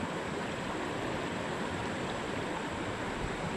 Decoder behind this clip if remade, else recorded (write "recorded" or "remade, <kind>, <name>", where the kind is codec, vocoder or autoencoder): remade, vocoder, BigVGAN v2